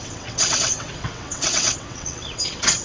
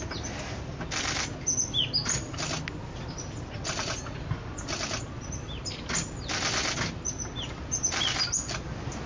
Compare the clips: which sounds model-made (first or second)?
first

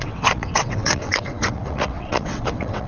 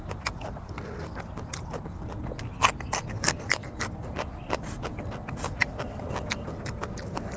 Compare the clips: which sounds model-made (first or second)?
first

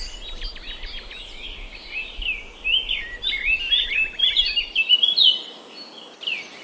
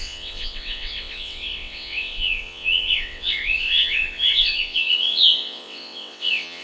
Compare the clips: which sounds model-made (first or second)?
second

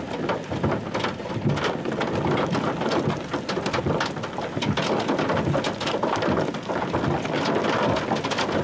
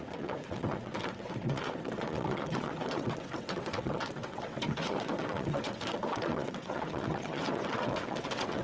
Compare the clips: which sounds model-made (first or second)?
second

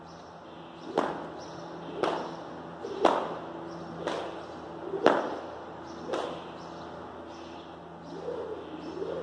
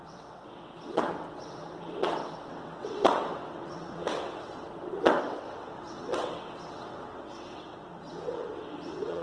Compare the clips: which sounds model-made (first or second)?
second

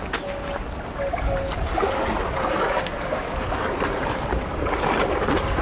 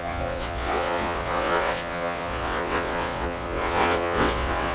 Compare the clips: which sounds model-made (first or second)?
second